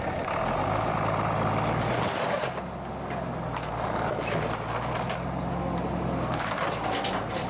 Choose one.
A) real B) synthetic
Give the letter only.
A